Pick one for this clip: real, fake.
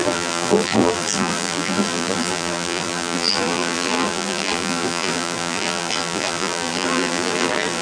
fake